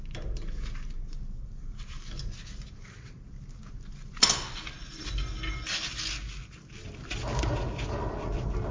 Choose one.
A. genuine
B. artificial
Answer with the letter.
A